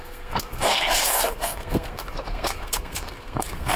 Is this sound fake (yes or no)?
yes